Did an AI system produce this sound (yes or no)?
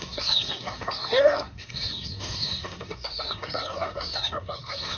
yes